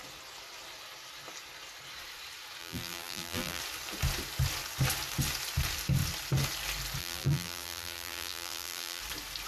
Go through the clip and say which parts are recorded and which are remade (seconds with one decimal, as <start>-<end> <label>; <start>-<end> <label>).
0.0-2.6 recorded; 2.6-3.6 remade; 3.6-7.0 recorded; 7.0-9.0 remade; 9.0-9.5 recorded